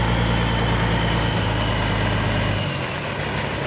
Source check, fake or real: real